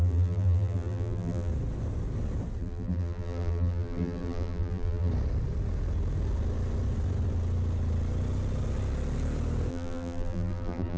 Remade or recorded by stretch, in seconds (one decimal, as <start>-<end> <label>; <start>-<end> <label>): 0.0-1.5 remade; 1.5-2.6 recorded; 2.6-5.1 remade; 5.1-9.7 recorded; 9.7-11.0 remade